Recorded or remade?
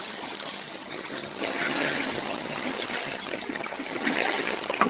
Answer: remade